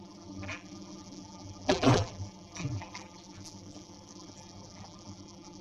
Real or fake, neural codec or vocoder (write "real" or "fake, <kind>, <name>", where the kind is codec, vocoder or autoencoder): fake, vocoder, BigVGAN v2